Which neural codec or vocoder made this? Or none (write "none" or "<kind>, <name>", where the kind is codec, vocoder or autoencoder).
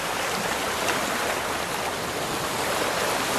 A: none